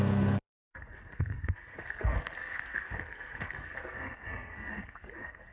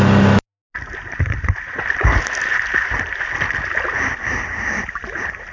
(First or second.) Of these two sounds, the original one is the second